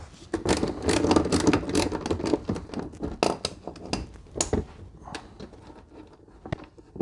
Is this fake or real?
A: real